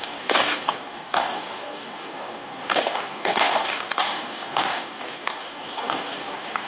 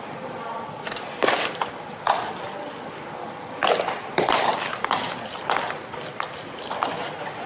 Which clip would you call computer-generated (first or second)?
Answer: first